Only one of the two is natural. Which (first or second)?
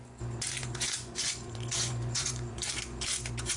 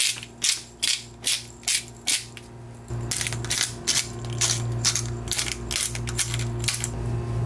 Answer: second